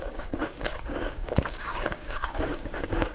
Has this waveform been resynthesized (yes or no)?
yes